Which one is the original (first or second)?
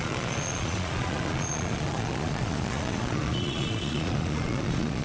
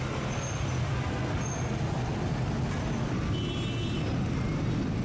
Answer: second